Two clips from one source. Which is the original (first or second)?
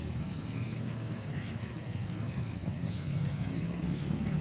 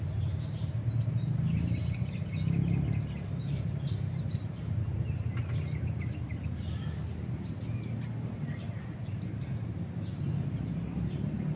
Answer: second